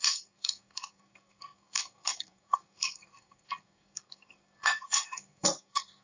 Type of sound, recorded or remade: remade